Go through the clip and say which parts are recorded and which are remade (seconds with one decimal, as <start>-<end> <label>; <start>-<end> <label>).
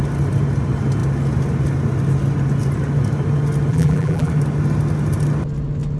0.0-3.7 recorded; 3.7-4.3 remade; 4.3-6.0 recorded